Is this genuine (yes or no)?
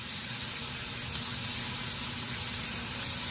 yes